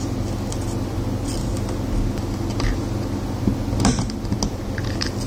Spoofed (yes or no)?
no